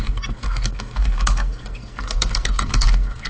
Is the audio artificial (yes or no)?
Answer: yes